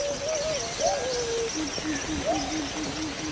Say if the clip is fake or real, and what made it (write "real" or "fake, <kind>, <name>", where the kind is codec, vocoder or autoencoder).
real